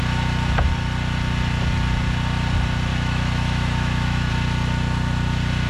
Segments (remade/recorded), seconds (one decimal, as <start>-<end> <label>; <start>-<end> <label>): 0.0-2.9 recorded; 2.9-4.3 remade; 4.3-5.7 recorded